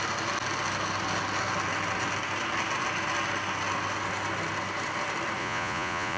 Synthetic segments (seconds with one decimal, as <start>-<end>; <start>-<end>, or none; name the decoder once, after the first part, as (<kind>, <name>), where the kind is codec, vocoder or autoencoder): 5.4-6.2 (vocoder, Vocos)

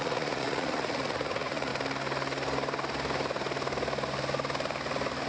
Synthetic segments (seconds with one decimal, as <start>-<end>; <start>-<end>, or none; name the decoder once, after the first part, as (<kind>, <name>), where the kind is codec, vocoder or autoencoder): 0.0-1.7 (vocoder, Vocos)